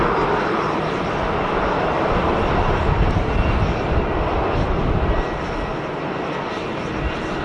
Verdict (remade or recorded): recorded